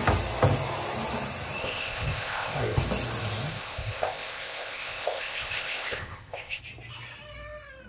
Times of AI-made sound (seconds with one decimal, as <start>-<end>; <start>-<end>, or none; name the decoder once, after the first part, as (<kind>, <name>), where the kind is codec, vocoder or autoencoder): 1.6-2.8 (codec, ZipCodec); 3.5-6.6